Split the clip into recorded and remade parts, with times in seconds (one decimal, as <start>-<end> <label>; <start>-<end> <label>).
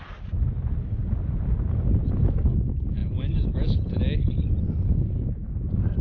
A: 0.0-6.0 recorded